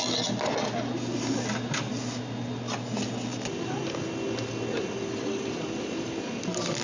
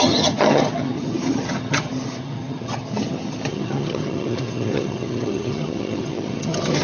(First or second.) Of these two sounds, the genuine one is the first